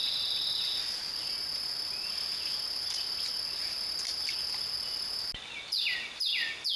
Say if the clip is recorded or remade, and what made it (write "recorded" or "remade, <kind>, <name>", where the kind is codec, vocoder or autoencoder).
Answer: recorded